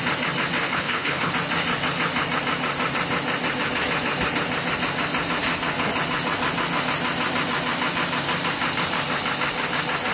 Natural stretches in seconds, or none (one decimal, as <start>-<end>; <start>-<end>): 0.0-0.6; 1.3-10.1